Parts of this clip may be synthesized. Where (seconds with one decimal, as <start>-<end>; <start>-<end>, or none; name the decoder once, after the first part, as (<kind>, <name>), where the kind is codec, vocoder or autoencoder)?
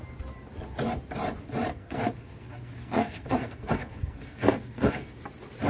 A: 1.7-5.1 (codec, SNAC)